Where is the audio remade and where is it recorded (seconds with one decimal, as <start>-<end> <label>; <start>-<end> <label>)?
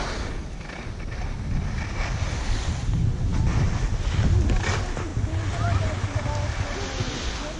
0.0-7.6 recorded